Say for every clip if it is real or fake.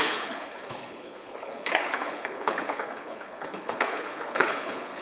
fake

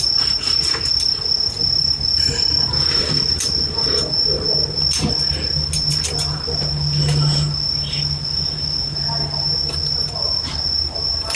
real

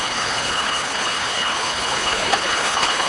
fake